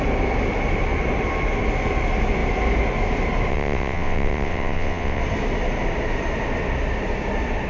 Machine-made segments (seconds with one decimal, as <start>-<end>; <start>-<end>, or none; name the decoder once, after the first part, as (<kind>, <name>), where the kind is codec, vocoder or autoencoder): 3.5-5.2 (vocoder, WaveNeXt)